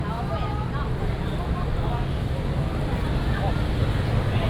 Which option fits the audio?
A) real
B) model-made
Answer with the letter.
A